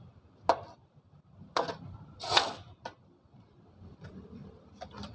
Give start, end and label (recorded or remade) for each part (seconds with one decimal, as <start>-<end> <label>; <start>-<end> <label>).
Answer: 0.0-5.1 recorded